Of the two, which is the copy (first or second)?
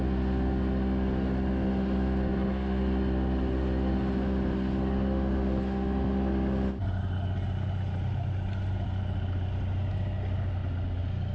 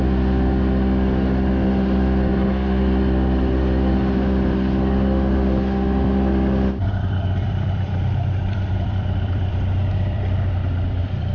second